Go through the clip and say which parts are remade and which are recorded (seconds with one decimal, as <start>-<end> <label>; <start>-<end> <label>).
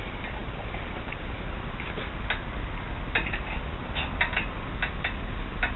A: 0.0-5.8 recorded